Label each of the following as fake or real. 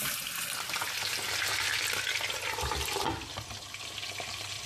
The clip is real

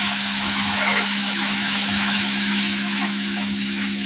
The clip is fake